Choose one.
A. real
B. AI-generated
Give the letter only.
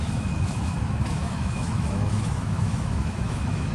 B